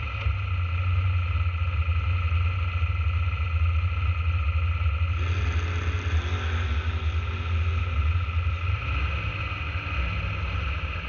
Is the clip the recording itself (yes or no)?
yes